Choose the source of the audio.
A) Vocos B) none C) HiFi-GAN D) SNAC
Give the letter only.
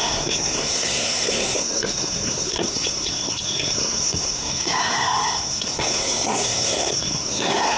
D